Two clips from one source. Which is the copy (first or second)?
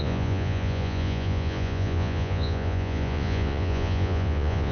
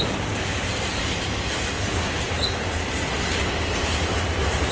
first